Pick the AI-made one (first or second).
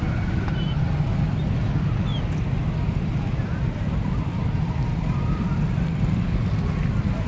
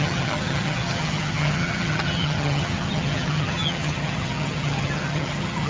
second